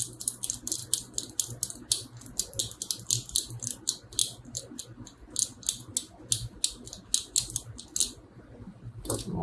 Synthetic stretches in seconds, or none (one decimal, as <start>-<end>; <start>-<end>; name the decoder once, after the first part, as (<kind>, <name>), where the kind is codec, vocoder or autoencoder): none